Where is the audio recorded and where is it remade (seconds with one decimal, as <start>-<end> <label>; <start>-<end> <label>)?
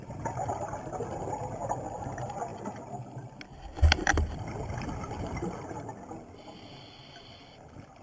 0.0-8.0 recorded